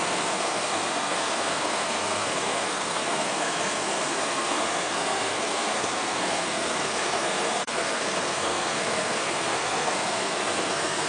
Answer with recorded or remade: remade